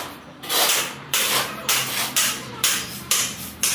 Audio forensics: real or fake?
fake